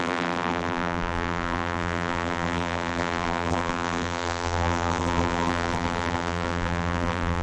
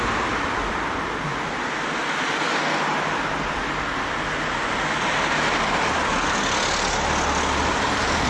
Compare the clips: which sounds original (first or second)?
second